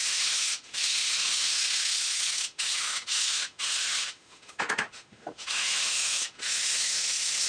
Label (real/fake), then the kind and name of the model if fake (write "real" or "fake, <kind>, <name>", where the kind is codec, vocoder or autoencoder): fake, autoencoder, DAC-VAE